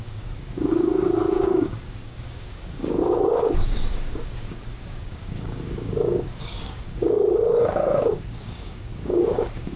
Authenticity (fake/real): fake